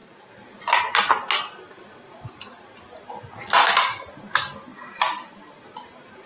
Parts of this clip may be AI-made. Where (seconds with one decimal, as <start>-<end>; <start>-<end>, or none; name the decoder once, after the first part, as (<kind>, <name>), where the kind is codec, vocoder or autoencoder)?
0.0-0.8 (vocoder, BigVGAN v2)